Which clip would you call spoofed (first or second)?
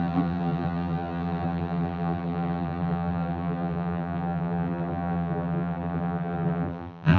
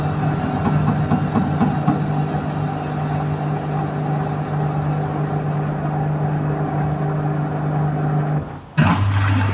first